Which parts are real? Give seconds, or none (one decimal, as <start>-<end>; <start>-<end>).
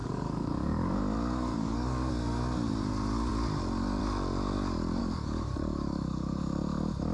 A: 1.0-1.5; 2.1-5.0; 6.4-7.1